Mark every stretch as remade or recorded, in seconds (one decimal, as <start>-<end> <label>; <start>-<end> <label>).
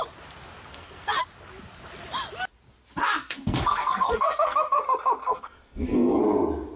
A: 0.0-0.7 recorded; 0.7-1.2 remade; 1.2-3.0 recorded; 3.0-4.8 remade; 4.8-5.2 recorded; 5.2-6.2 remade; 6.2-6.8 recorded